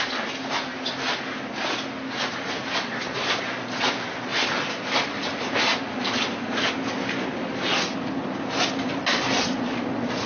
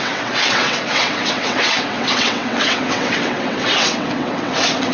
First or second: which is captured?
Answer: first